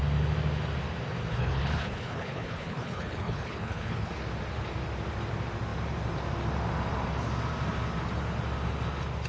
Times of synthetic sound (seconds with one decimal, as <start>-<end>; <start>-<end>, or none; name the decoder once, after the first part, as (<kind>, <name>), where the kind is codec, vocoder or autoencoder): 1.3-4.1 (codec, HILCodec)